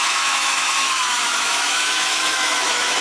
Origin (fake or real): fake